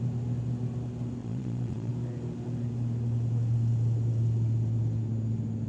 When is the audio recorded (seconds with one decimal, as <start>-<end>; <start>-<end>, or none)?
0.0-1.2; 1.9-5.7